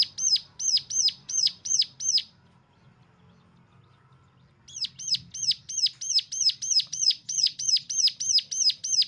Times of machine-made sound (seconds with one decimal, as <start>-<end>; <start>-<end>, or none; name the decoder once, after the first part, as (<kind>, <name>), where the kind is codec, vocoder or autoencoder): 1.2-1.8 (vocoder, Vocos); 6.9-7.7